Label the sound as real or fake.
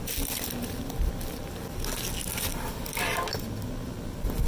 real